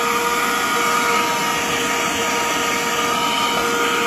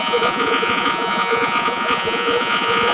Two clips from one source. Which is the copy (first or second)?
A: second